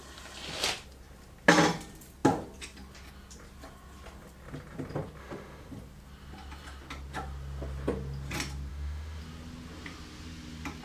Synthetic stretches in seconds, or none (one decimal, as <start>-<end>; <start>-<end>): 5.2-5.7; 8.7-9.2